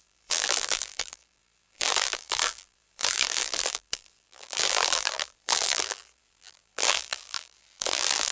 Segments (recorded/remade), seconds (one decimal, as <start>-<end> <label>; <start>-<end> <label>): 0.0-8.3 remade